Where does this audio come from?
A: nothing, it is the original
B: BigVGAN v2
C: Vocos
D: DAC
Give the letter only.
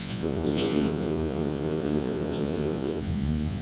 C